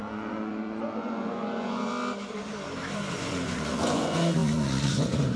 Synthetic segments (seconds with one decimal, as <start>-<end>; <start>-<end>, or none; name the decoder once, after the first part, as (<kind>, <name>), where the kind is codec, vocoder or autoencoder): 0.0-1.9 (vocoder, Vocos); 3.1-5.4

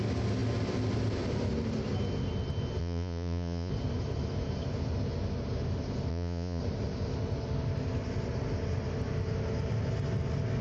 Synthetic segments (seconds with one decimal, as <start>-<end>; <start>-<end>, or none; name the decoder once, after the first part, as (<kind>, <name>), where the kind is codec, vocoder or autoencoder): 2.8-3.7 (vocoder, Vocos); 6.1-6.6

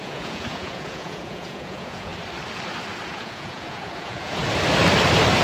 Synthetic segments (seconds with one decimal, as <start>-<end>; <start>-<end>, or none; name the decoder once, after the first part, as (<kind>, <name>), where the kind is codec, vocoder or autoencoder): 0.0-2.1 (vocoder, Vocos); 3.1-4.4

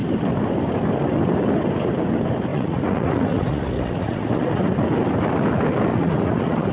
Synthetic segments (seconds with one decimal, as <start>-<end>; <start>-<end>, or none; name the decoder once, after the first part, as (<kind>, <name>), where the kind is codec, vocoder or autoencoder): 2.5-4.7 (vocoder, Vocos); 5.9-6.7